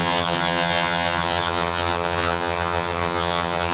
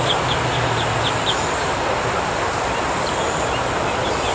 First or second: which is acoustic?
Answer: second